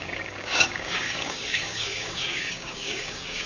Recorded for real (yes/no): no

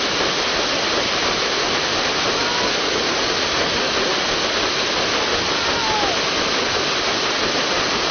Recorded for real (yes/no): yes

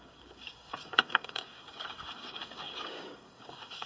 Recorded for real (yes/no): no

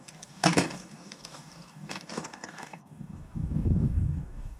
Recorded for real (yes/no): no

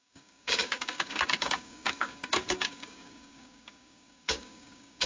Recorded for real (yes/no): no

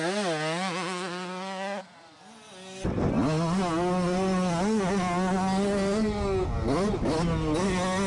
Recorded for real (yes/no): yes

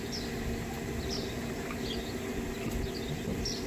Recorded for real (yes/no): yes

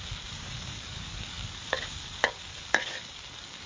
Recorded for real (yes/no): no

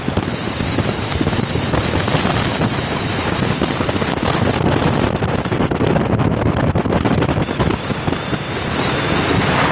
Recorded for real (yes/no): yes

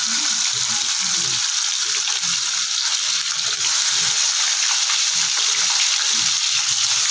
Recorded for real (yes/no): yes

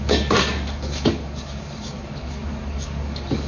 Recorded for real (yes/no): no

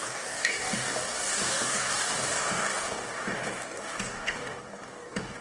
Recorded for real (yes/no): no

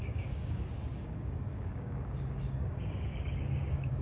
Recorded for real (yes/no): no